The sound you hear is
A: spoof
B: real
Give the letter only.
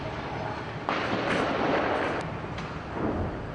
B